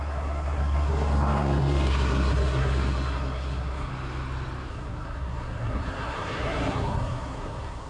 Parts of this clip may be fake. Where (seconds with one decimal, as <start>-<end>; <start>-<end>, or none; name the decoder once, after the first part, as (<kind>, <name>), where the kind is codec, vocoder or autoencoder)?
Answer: 0.0-3.9 (codec, SNAC); 4.7-7.9